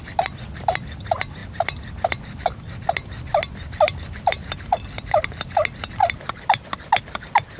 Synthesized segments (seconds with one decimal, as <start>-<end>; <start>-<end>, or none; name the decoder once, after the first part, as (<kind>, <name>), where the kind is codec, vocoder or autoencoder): none